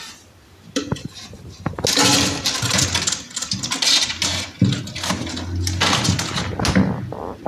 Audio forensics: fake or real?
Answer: real